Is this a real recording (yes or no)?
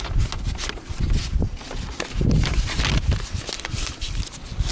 yes